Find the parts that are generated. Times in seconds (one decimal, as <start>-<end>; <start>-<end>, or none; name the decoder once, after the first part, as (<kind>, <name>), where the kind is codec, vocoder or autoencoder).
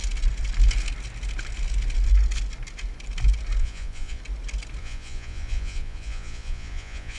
3.6-4.2 (vocoder, Vocos); 4.8-7.2